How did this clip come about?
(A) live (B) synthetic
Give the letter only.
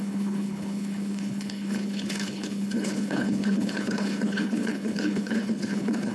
B